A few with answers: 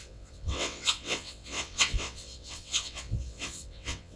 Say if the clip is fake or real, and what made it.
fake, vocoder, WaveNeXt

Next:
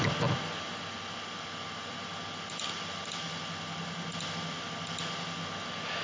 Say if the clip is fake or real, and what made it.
real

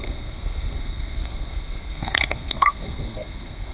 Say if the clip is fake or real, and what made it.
fake, codec, SNAC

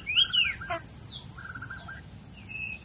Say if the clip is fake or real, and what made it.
real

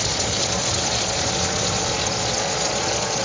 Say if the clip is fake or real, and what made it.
fake, vocoder, Vocos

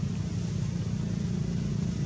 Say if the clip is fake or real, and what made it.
real